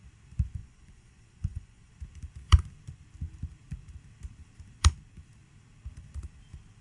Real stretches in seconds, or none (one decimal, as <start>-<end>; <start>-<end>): 0.0-0.6; 1.9-6.8